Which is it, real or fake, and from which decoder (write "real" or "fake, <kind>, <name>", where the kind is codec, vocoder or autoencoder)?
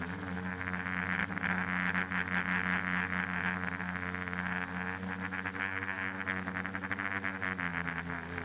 real